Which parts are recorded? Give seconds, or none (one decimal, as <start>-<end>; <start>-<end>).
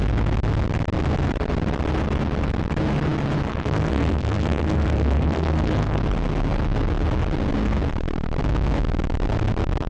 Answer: 0.0-3.5; 6.0-9.9